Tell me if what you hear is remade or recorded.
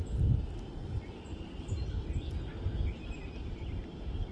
recorded